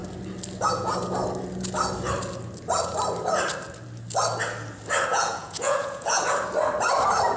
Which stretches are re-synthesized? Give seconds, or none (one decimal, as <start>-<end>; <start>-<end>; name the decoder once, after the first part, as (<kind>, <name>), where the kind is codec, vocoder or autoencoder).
5.1-6.2 (vocoder, Vocos)